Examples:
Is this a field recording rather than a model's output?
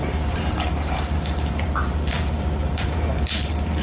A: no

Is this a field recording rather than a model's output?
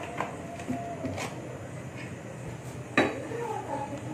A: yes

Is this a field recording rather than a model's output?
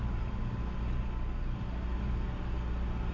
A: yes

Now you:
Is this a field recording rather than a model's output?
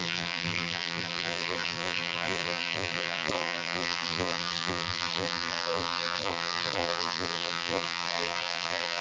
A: no